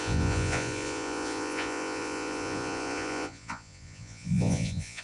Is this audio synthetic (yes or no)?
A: yes